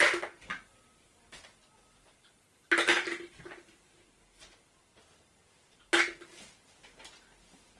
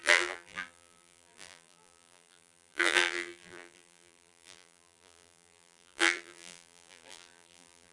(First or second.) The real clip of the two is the first